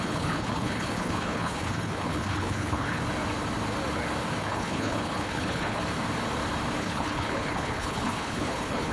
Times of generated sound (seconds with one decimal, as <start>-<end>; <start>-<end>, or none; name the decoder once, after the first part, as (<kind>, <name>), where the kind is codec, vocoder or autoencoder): 0.0-3.0 (codec, HILCodec); 4.4-5.8; 6.8-8.9